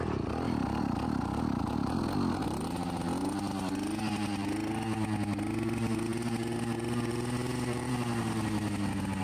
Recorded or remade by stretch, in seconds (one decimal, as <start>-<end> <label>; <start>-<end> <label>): 0.0-9.2 recorded